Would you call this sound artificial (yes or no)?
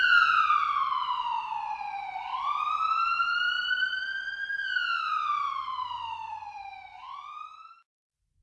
no